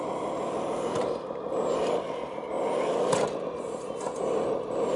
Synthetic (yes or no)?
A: no